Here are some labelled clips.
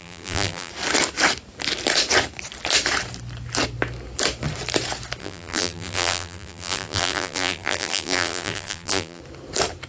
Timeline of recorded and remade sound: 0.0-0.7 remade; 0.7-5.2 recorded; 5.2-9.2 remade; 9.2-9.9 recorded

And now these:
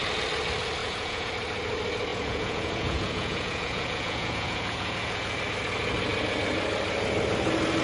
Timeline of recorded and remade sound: 0.0-0.8 recorded; 0.8-1.3 remade; 1.3-2.1 recorded; 2.1-5.4 remade; 5.4-7.8 recorded

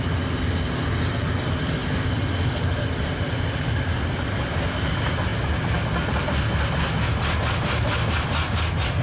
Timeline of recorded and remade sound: 0.0-9.0 recorded

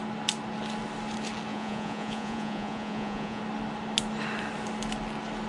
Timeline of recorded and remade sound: 0.0-1.5 recorded; 1.5-3.4 remade; 3.4-5.5 recorded

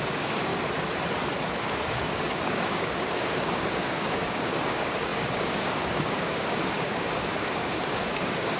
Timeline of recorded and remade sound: 0.0-0.5 remade; 0.5-1.6 recorded; 1.6-8.6 remade